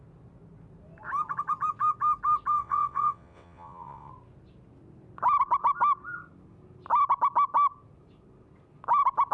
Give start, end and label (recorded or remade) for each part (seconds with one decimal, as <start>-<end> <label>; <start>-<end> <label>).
0.0-2.6 recorded; 2.6-4.1 remade; 4.1-9.3 recorded